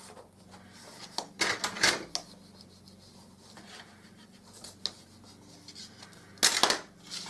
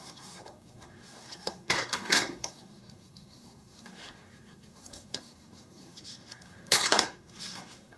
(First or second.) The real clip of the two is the first